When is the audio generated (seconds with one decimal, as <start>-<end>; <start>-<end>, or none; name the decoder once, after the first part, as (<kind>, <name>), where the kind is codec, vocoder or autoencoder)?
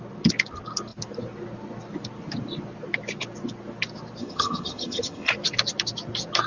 4.2-5.3 (vocoder, HiFi-GAN)